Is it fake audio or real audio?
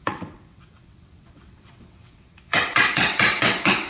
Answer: fake